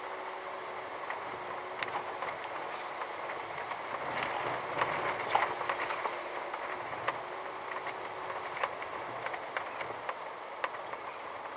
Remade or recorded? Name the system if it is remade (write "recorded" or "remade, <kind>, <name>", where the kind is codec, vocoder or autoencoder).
recorded